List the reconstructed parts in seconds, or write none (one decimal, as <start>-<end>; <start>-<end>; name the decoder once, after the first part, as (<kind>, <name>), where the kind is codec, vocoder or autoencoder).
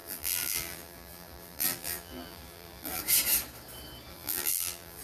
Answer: 0.0-3.0 (vocoder, BigVGAN v2); 4.1-5.0